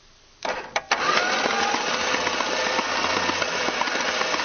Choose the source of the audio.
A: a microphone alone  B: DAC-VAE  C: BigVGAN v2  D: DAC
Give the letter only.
C